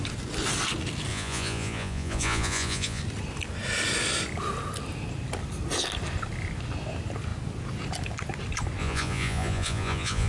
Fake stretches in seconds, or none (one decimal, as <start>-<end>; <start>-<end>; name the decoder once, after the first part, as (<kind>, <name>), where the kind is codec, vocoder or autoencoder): 1.1-3.0 (vocoder, Vocos); 8.8-10.3